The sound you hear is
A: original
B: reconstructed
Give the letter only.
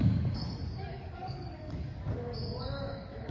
B